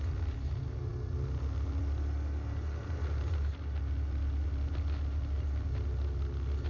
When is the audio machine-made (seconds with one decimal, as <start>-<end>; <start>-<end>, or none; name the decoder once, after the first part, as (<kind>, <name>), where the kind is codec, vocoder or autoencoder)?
none